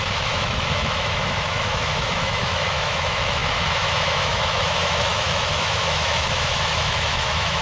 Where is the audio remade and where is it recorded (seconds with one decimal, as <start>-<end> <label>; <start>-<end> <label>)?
0.0-7.6 remade